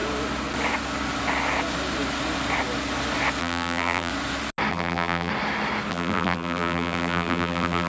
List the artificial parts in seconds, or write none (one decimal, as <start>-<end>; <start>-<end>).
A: 3.4-4.1; 4.7-5.3; 5.9-7.9